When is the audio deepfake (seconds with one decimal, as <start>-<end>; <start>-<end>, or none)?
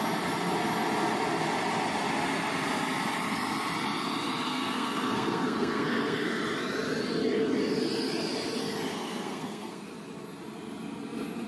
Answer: 4.5-6.4; 8.9-9.8